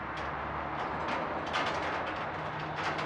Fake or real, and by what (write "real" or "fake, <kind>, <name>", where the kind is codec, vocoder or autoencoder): real